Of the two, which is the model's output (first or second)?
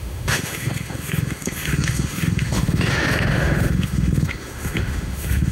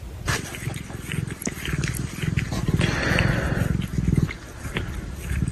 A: first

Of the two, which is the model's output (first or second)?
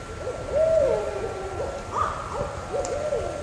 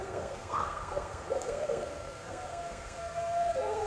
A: second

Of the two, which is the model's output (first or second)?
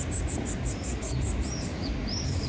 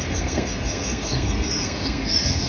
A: second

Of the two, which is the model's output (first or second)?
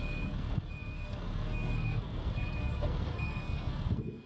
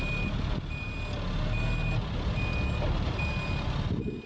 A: first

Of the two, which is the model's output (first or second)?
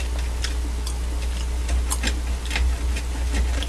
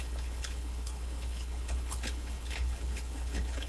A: second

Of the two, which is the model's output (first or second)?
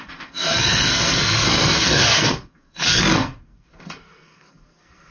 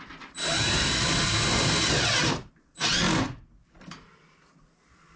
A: first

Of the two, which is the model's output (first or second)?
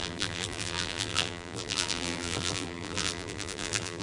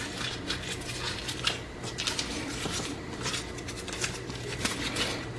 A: first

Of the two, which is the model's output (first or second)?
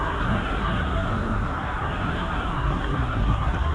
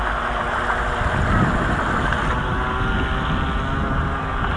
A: first